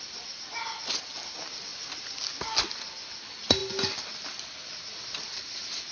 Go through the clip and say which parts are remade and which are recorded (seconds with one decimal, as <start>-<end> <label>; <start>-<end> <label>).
0.0-5.9 recorded